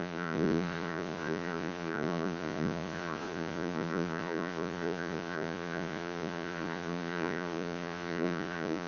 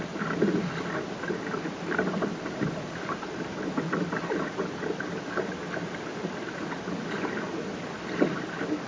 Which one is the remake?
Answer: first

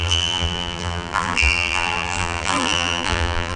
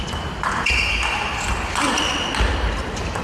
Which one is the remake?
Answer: first